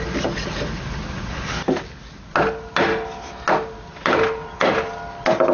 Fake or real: real